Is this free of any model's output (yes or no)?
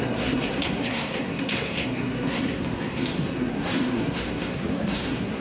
no